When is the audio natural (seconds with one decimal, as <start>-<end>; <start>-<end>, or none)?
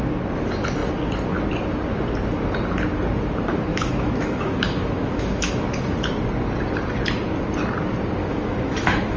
0.0-3.7; 5.5-8.2